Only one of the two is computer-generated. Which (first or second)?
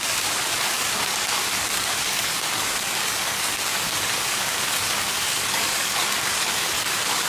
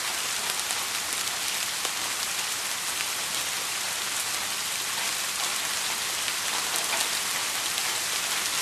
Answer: first